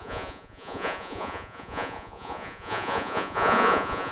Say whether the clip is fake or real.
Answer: fake